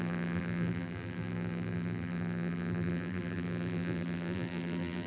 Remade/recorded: remade